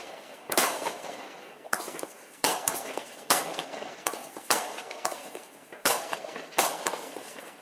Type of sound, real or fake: fake